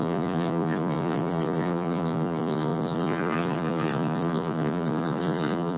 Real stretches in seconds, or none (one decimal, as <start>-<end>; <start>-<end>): none